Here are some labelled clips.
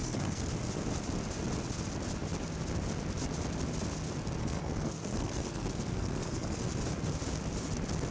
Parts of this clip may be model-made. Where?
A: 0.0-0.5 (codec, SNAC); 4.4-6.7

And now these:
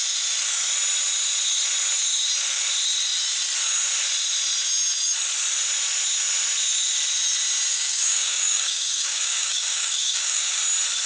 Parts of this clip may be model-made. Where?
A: 7.7-10.6 (codec, DAC)

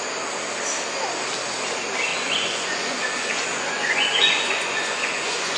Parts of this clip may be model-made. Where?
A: 2.1-5.6 (vocoder, Vocos)

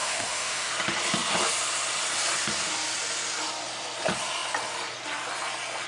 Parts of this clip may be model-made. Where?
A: 0.0-0.7 (autoencoder, DAC-VAE)

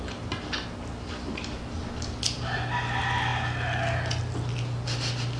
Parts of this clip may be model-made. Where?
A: none